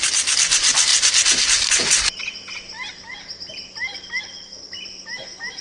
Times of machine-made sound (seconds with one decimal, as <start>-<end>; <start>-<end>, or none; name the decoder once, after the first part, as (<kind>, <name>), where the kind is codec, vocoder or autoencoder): none